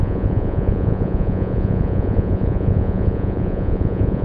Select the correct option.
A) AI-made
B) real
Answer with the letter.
A